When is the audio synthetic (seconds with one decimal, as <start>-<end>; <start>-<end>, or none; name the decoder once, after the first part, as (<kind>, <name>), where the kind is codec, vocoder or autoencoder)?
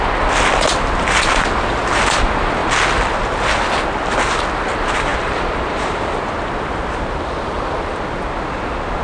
5.1-6.1 (vocoder, BigVGAN v2)